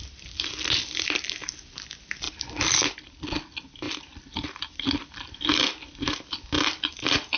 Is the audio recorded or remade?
recorded